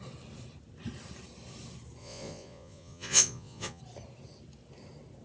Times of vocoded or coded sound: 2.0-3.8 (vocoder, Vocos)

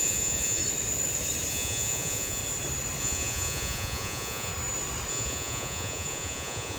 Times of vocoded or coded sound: 0.0-0.6 (vocoder, Vocos); 1.5-2.4; 3.0-4.5; 5.1-6.8

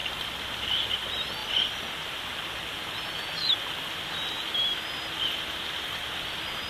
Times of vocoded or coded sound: none

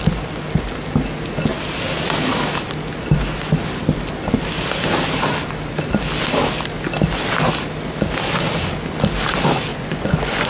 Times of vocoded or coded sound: 9.7-10.5 (vocoder, Vocos)

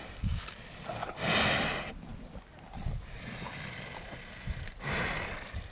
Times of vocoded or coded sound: none

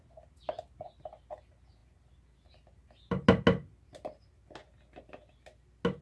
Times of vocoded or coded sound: none